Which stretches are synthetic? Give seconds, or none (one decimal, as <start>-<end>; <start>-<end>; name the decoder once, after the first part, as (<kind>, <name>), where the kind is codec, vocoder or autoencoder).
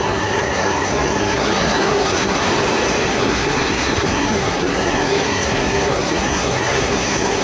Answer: 0.0-2.4 (codec, SNAC); 3.1-7.4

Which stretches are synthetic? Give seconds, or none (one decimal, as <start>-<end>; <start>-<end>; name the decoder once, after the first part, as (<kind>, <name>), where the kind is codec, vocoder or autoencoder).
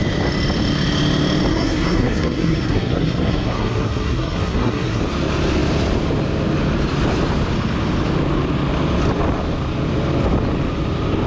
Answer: 1.5-5.0 (codec, SNAC)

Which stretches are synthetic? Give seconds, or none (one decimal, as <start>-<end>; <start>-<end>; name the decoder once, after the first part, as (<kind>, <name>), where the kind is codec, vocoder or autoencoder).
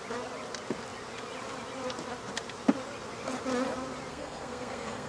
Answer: 4.1-5.1 (codec, SNAC)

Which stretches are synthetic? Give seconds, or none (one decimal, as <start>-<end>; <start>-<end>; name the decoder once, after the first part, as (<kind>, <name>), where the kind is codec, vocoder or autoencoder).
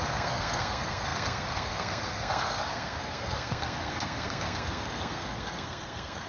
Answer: 0.0-6.3 (codec, SNAC)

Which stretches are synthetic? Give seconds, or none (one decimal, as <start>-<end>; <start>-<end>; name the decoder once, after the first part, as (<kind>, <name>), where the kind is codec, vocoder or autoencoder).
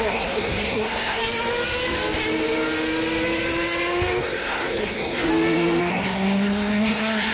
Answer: 0.0-1.2 (codec, SNAC); 4.2-5.3; 5.8-7.3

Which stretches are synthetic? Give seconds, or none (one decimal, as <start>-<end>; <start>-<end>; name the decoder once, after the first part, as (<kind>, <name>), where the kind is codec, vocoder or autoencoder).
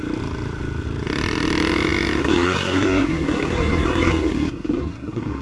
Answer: 2.2-5.4 (codec, SNAC)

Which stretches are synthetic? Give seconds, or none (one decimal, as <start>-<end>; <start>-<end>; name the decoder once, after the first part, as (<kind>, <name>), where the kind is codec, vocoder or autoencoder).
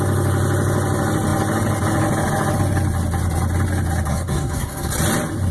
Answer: 4.1-4.9 (codec, SNAC)